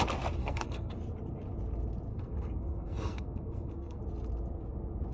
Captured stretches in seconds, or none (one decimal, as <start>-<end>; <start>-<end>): 0.0-0.4; 0.9-2.1; 4.0-5.1